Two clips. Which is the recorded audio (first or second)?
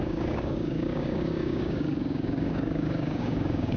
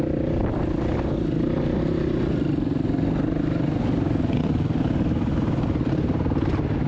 second